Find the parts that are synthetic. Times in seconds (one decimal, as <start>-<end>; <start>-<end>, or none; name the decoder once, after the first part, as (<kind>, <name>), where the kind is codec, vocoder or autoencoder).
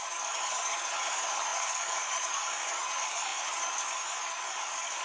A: 0.0-5.0 (codec, DAC)